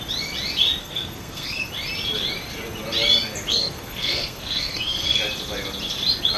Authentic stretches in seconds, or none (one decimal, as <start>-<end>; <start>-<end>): 0.0-0.8; 1.7-3.5; 5.2-6.4